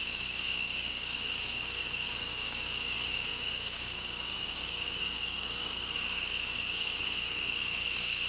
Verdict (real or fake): fake